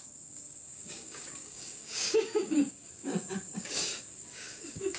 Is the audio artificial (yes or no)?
yes